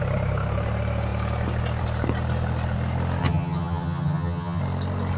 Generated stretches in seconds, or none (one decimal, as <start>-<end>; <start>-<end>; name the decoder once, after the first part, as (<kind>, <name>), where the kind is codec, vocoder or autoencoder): 3.2-4.6 (vocoder, HiFi-GAN)